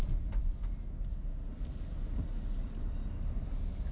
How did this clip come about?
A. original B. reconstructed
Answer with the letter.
A